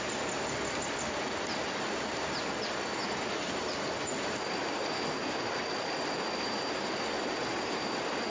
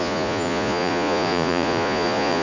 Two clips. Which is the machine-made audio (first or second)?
second